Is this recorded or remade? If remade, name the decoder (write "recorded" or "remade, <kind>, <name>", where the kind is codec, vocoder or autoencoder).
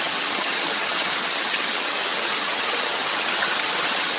remade, vocoder, HiFi-GAN